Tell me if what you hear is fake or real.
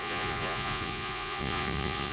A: fake